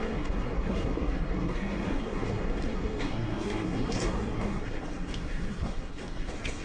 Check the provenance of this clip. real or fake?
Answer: fake